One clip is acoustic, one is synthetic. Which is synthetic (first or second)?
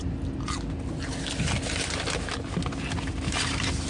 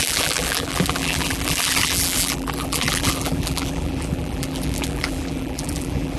second